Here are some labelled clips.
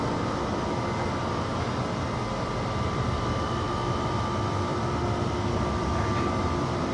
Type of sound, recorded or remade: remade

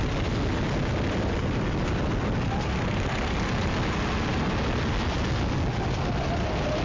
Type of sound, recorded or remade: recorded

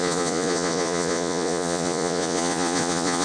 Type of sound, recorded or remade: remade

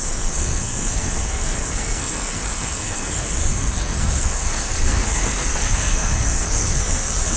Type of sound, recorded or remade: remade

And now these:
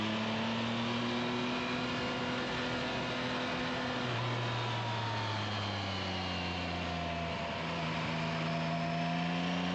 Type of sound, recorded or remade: recorded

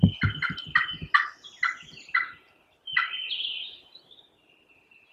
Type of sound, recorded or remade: recorded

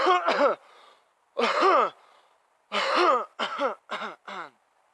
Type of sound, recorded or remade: recorded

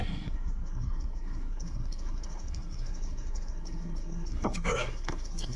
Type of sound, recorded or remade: remade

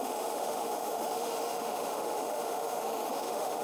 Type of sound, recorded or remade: remade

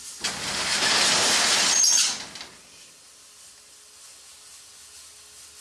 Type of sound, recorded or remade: recorded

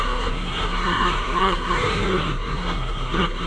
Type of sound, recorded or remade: remade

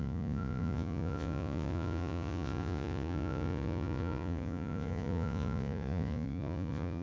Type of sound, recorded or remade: remade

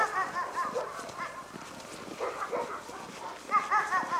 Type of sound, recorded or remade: remade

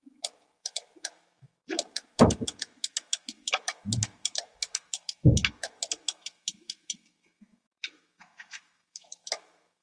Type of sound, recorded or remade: remade